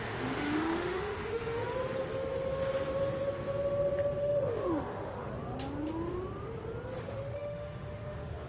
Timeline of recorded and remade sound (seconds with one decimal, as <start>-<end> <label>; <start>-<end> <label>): 0.0-1.6 remade; 1.6-4.2 recorded; 4.2-5.3 remade; 5.3-7.0 recorded; 7.0-8.5 remade